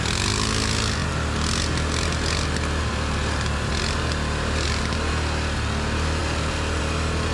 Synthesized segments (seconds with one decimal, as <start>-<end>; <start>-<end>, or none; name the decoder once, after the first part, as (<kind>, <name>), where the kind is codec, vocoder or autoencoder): none

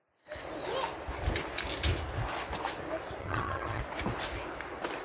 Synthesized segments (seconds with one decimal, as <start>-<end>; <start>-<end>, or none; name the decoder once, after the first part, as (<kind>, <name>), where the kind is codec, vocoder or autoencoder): 3.2-3.8 (vocoder, HiFi-GAN)

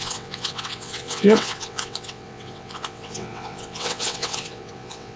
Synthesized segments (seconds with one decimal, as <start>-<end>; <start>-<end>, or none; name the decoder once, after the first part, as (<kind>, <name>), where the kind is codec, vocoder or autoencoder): 0.0-5.2 (vocoder, WaveNeXt)

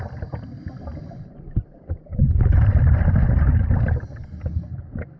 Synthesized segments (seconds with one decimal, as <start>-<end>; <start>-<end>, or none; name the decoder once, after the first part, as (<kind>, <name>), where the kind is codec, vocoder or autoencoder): 0.9-4.0 (vocoder, BigVGAN v2)